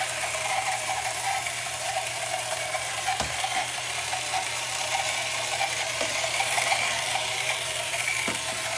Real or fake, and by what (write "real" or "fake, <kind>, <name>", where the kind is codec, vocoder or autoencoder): fake, vocoder, BigVGAN v2